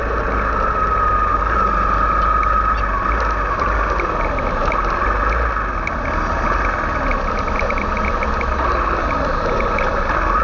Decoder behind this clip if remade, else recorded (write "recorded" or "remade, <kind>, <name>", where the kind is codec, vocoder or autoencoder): recorded